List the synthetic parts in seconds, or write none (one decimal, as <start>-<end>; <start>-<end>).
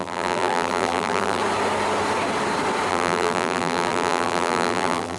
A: 0.0-1.4; 2.9-5.2